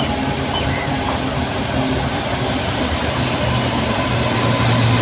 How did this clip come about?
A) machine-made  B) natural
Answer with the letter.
B